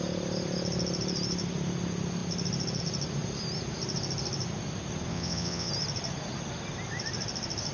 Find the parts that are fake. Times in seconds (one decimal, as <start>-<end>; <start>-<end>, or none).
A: 5.1-5.7